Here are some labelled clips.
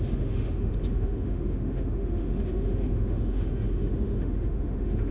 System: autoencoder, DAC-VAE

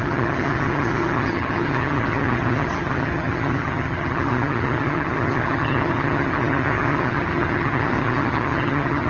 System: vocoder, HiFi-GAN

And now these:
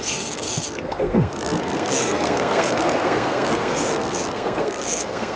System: codec, SNAC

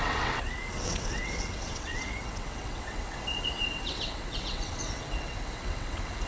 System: vocoder, WaveNeXt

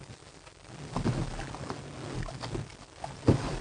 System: none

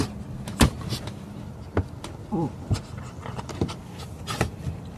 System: none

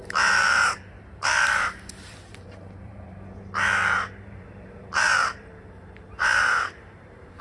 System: vocoder, BigVGAN v2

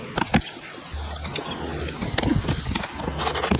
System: none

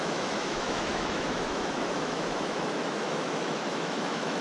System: autoencoder, DAC-VAE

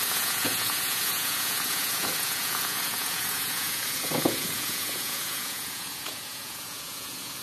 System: vocoder, Vocos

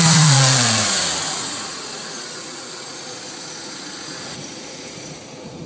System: vocoder, Vocos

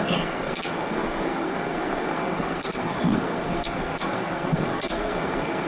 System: codec, SNAC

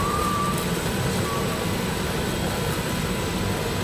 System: none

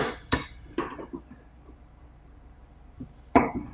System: vocoder, BigVGAN v2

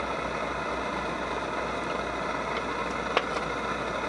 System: none